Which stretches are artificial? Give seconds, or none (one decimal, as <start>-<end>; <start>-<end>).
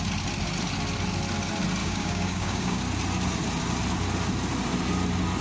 1.8-2.8